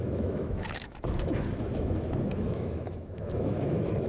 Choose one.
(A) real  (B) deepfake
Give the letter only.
B